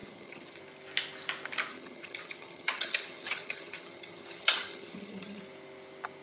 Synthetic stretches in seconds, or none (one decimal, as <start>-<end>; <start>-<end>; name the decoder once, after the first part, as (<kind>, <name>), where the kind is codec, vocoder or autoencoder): 0.0-0.6 (vocoder, HiFi-GAN); 1.7-5.4